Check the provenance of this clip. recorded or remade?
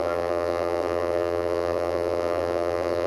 remade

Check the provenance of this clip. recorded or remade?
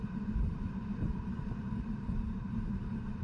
remade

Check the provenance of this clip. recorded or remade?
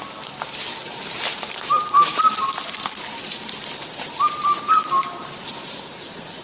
remade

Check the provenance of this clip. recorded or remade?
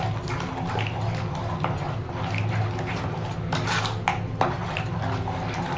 recorded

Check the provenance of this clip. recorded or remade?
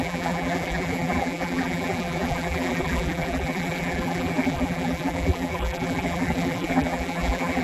remade